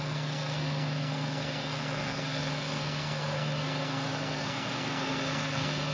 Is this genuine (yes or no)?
no